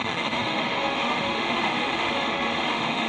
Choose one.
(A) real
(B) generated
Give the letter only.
B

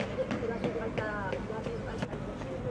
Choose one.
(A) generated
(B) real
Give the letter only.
B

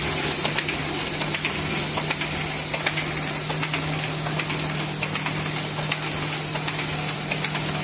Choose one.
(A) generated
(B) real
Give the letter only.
B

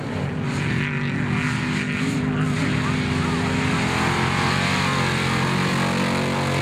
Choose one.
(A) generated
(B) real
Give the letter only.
B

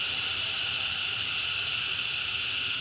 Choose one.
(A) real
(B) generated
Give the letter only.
A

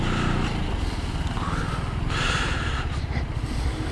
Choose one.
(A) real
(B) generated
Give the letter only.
A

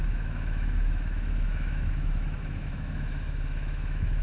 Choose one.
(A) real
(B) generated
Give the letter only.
B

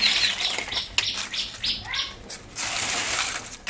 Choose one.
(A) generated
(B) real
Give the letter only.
B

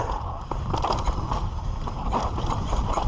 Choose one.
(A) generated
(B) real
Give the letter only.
B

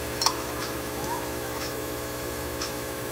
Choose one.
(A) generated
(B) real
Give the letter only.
A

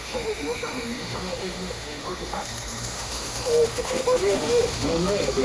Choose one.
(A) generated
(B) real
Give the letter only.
A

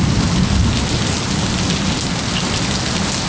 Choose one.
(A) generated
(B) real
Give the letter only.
B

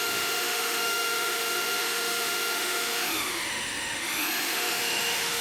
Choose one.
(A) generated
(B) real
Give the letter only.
A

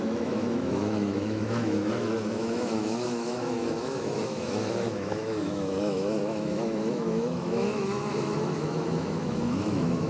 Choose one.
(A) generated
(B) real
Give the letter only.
A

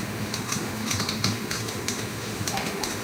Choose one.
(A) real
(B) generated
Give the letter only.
B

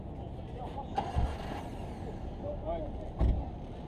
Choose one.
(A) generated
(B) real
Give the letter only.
B